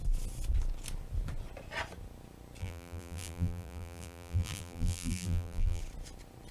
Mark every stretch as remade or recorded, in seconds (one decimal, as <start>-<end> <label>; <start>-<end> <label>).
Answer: 0.0-2.6 recorded; 2.6-5.8 remade; 5.8-6.5 recorded

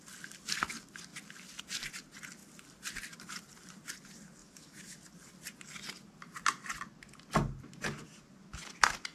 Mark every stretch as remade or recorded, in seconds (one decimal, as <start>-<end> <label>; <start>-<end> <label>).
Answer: 0.0-4.4 recorded; 4.4-5.0 remade; 5.0-9.1 recorded

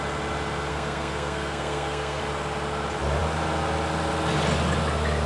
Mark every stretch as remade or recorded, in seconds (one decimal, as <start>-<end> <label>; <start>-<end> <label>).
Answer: 0.0-0.7 recorded; 0.7-2.2 remade; 2.2-5.3 recorded

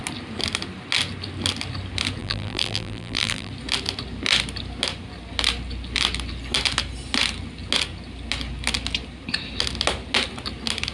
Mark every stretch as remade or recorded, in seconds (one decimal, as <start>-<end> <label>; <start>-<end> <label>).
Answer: 0.0-2.2 recorded; 2.2-3.5 remade; 3.5-10.9 recorded

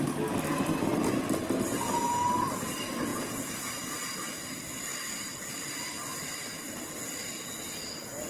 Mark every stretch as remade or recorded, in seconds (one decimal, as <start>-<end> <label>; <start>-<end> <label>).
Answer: 0.0-3.1 recorded; 3.1-3.7 remade; 3.7-8.3 recorded

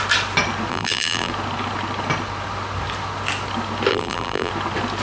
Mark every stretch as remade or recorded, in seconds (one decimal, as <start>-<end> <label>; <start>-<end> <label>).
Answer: 0.0-0.7 recorded; 0.7-1.3 remade; 1.3-3.9 recorded; 3.9-4.5 remade; 4.5-5.0 recorded

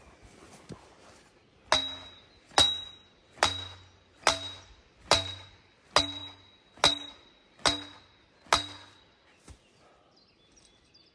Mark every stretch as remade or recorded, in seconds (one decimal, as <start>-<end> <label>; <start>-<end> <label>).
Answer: 0.0-11.1 recorded

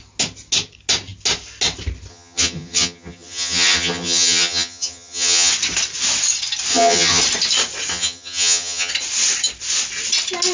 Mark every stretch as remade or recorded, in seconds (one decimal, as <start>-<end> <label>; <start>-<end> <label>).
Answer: 0.0-2.1 recorded; 2.1-5.5 remade; 5.5-6.7 recorded; 6.7-7.2 remade; 7.2-7.9 recorded; 7.9-8.9 remade; 8.9-10.5 recorded